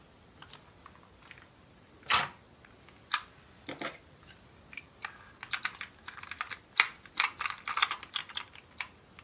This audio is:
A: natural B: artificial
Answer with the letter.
A